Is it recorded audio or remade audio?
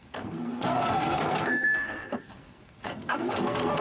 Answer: remade